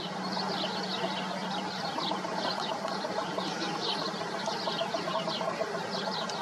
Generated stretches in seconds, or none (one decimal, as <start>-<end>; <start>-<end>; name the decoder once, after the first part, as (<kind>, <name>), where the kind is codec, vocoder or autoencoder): 1.4-4.1 (vocoder, BigVGAN v2)